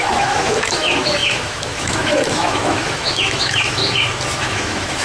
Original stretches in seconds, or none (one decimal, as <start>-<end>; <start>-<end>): 3.8-4.4